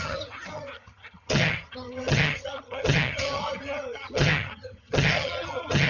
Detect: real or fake fake